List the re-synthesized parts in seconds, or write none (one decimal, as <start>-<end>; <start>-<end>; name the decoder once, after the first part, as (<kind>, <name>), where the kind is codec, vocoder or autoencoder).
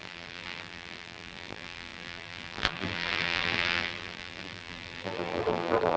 0.0-6.0 (vocoder, BigVGAN v2)